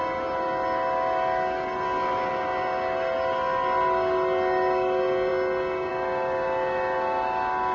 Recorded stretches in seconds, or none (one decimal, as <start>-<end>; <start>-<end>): 0.0-7.7